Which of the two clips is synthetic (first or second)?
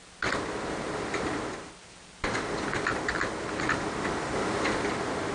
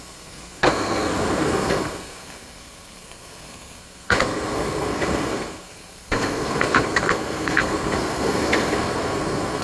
second